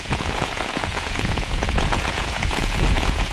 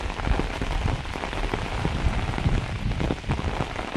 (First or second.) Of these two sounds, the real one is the second